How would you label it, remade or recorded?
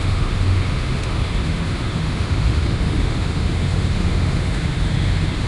remade